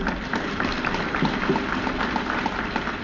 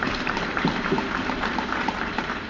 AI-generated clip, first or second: second